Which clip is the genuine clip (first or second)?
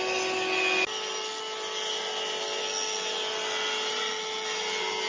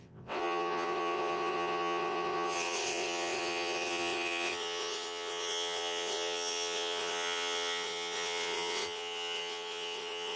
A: first